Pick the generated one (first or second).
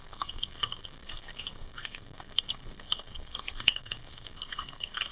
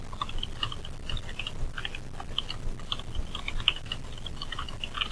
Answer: first